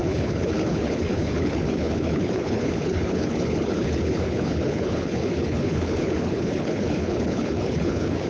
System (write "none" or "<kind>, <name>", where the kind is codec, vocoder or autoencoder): codec, HILCodec